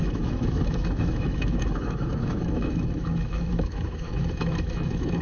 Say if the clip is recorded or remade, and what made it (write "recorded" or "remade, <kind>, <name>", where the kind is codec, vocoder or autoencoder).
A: remade, autoencoder, DAC-VAE